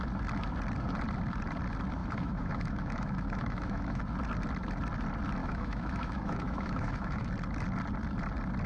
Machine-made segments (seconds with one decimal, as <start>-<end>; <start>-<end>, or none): 2.0-4.0; 5.4-7.3